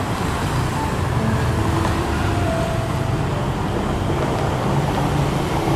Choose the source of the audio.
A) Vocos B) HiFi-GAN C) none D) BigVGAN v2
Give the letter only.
C